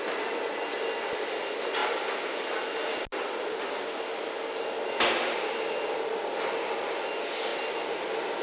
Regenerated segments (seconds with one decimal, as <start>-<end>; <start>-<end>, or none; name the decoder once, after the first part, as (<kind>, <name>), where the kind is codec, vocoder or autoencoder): none